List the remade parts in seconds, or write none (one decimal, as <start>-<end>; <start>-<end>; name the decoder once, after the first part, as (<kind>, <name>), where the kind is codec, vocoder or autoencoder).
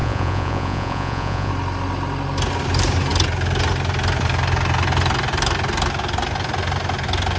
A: 0.0-1.5 (vocoder, Vocos)